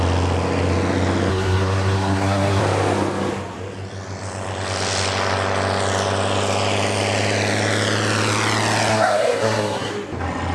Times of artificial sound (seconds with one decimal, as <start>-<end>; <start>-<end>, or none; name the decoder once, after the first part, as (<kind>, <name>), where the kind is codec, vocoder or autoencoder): 1.3-2.6 (codec, SNAC); 8.9-9.9